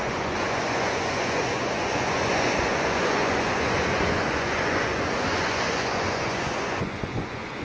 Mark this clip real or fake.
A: fake